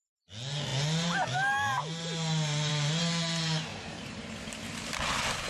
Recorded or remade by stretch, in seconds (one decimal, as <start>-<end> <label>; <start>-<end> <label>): 0.0-3.7 recorded; 3.7-4.3 remade; 4.3-5.5 recorded